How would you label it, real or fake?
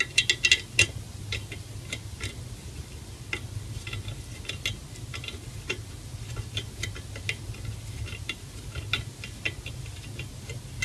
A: real